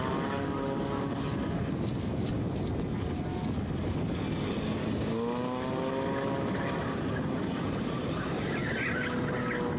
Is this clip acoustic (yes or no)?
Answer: yes